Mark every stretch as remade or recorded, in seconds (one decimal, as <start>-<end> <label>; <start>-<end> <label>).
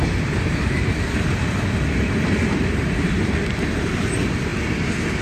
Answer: 0.0-2.6 recorded; 2.6-3.9 remade; 3.9-5.2 recorded